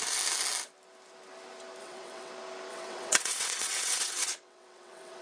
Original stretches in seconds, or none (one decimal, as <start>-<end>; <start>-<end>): 0.0-1.8; 2.3-2.7

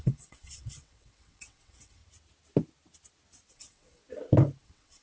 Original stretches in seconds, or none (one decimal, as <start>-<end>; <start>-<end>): 2.0-3.5; 4.0-4.6